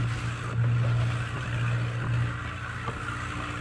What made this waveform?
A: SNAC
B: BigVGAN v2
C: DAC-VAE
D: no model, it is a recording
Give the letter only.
D